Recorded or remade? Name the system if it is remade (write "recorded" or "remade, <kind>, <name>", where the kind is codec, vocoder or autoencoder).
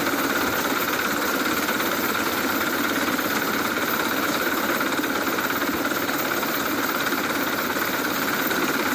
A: recorded